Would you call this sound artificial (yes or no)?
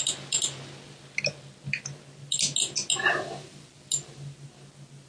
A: no